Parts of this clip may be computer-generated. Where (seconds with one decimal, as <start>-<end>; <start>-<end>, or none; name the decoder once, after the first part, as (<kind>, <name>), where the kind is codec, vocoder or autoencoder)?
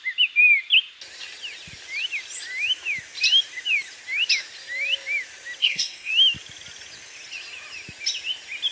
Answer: 5.6-6.1 (codec, SNAC)